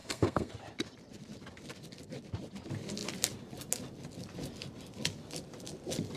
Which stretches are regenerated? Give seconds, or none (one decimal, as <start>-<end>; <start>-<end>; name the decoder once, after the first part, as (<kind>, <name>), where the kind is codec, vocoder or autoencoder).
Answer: 0.0-0.5 (codec, SNAC)